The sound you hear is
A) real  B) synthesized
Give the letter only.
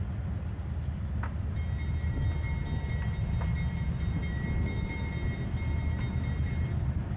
A